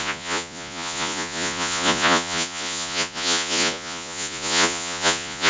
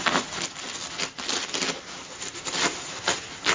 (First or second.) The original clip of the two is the second